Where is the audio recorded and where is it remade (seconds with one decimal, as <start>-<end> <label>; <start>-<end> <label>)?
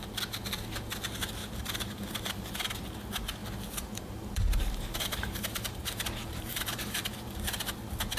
0.0-1.4 recorded; 1.4-2.5 remade; 2.5-3.4 recorded; 3.4-7.6 remade; 7.6-8.2 recorded